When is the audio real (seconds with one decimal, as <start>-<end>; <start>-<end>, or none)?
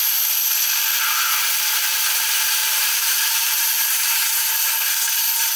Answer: 0.0-2.6; 4.3-5.6